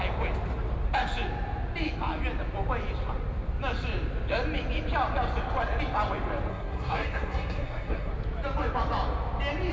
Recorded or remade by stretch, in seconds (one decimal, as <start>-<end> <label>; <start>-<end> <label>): 0.0-6.5 recorded; 6.5-8.1 remade; 8.1-9.7 recorded